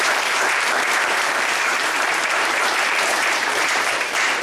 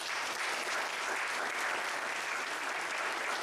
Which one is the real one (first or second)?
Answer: second